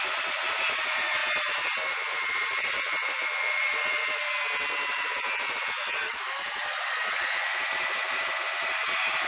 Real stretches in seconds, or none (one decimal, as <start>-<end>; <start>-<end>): 1.2-1.9; 4.2-4.9; 6.0-7.1